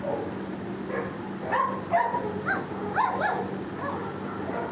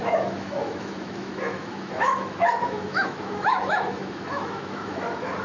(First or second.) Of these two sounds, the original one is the first